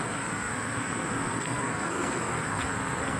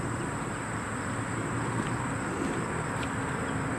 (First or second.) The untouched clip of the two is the second